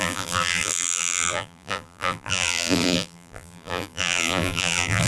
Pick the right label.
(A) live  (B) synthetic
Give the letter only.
B